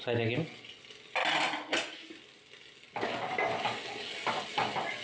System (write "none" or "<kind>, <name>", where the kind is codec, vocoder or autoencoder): none